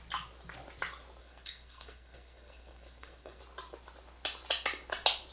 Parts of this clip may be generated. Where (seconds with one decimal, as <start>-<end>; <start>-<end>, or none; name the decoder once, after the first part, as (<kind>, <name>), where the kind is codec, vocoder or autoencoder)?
1.2-3.4 (codec, SNAC)